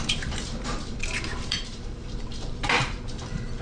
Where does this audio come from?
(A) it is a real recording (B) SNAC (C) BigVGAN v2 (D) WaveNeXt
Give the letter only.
C